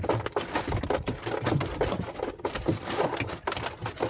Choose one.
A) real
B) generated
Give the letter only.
A